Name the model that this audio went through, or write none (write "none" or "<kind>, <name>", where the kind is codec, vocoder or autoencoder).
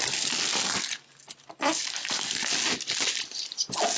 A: none